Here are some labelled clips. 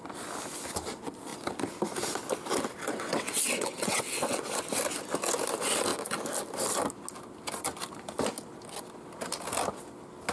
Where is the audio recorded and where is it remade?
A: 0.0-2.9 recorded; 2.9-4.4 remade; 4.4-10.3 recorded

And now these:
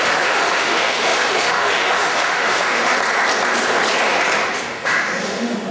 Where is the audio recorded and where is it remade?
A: 0.0-2.9 remade; 2.9-4.6 recorded; 4.6-5.7 remade

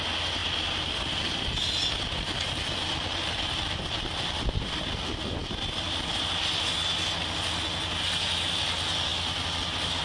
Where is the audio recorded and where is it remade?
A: 0.0-0.4 recorded; 0.4-4.9 remade; 4.9-10.0 recorded

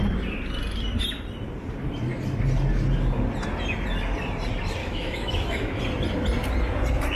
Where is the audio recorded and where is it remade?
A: 0.0-4.8 recorded; 4.8-5.8 remade; 5.8-7.2 recorded

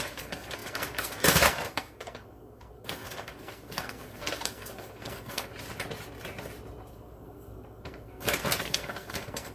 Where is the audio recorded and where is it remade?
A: 0.0-5.5 remade; 5.5-6.9 recorded; 6.9-9.5 remade

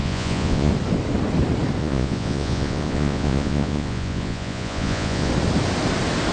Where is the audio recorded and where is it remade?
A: 0.0-0.7 remade; 0.7-1.8 recorded; 1.8-5.3 remade; 5.3-6.3 recorded